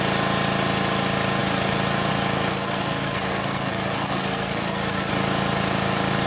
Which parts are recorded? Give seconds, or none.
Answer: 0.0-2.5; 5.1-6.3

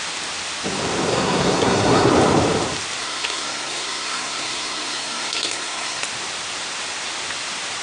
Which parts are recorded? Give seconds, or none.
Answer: 0.0-1.1; 2.1-3.0; 6.0-7.8